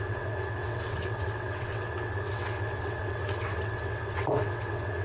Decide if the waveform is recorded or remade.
remade